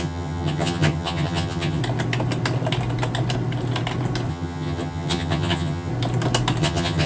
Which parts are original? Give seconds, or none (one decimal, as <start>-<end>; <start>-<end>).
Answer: 1.8-4.3; 5.9-6.6